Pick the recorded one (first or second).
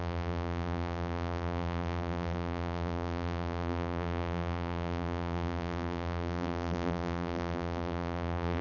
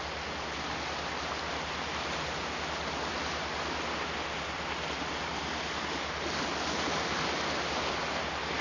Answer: second